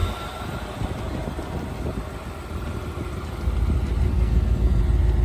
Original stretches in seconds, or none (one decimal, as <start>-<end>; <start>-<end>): 0.0-4.1; 4.8-5.2